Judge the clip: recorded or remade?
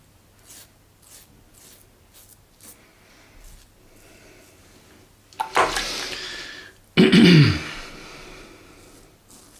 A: recorded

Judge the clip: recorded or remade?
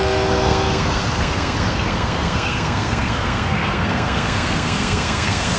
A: remade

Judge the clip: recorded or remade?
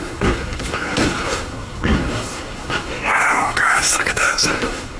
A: remade